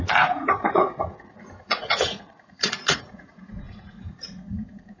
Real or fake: fake